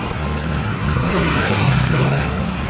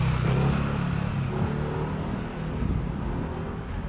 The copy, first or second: first